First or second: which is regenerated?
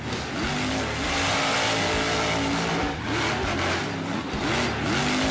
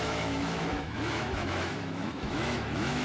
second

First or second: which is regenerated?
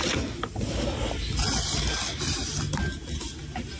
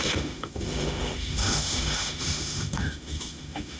second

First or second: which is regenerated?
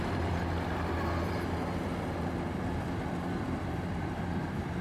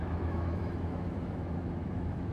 second